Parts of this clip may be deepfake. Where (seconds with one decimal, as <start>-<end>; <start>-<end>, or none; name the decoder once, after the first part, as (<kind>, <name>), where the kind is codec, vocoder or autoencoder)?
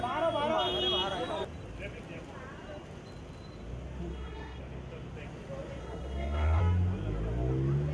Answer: 4.1-4.6 (codec, SNAC); 5.8-6.6